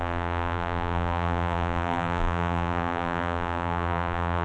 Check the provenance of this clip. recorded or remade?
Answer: remade